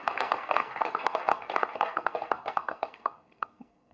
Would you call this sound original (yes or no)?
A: no